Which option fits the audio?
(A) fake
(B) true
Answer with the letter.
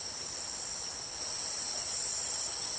B